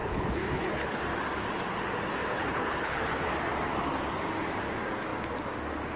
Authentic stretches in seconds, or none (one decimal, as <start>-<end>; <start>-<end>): 1.0-2.3; 3.3-6.0